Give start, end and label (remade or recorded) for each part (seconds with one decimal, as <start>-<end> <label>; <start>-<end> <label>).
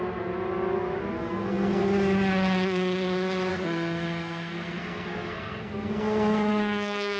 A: 0.0-1.2 recorded; 1.2-1.8 remade; 1.8-3.5 recorded; 3.5-7.2 remade